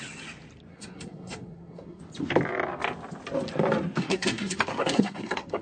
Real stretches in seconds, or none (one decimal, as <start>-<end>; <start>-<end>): 0.0-0.7; 2.0-4.0